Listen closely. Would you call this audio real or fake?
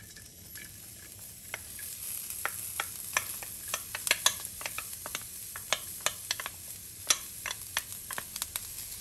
real